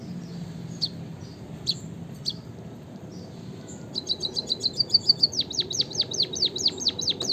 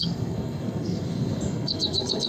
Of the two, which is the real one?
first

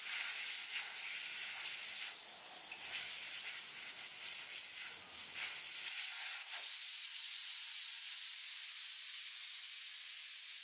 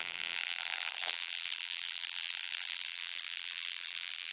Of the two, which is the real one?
first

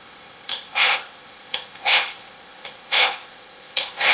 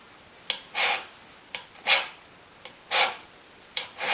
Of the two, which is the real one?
second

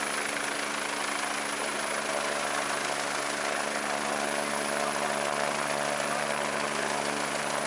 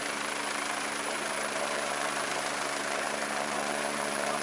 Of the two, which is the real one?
first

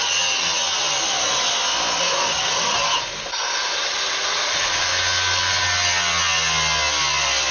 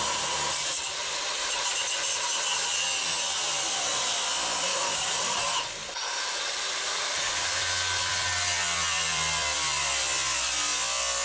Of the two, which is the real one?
first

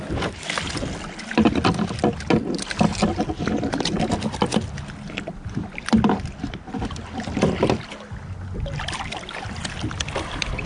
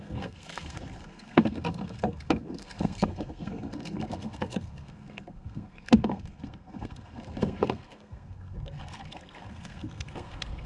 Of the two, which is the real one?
first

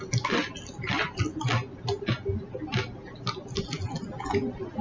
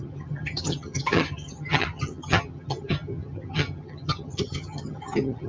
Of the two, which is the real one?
first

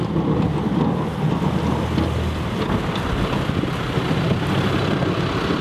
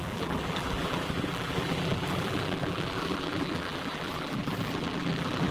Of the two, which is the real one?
first